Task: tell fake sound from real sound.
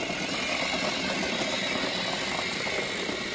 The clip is real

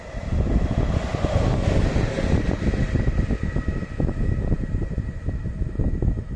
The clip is real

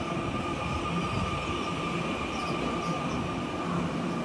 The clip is real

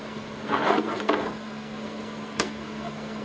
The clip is fake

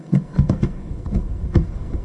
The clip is fake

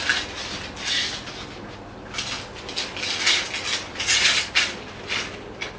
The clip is real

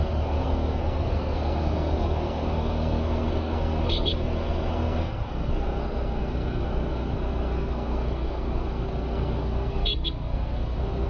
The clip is fake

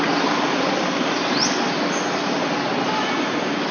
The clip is real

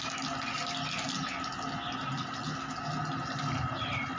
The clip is real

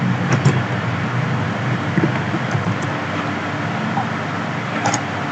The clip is real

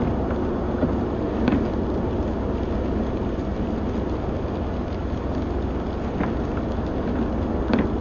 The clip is real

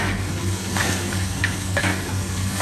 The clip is fake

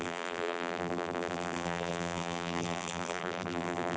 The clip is fake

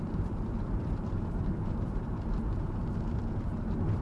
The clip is fake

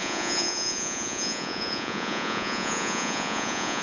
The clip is fake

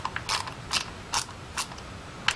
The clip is real